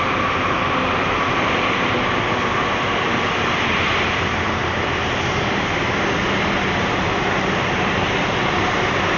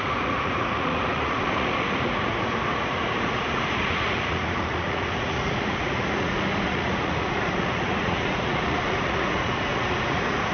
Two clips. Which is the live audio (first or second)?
first